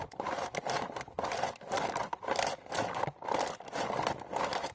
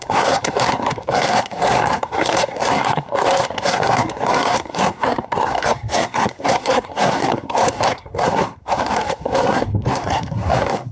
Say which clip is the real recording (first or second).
first